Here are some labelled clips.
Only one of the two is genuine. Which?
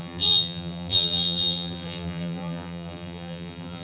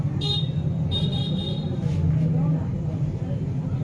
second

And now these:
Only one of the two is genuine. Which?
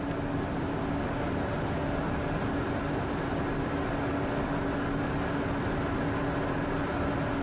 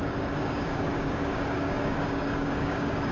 first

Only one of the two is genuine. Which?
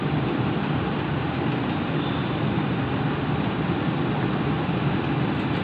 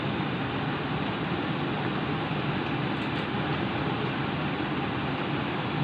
second